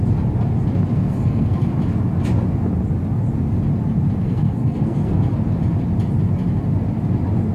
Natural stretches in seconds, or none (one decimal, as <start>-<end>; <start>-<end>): 0.0-0.9; 1.7-4.2; 5.3-7.5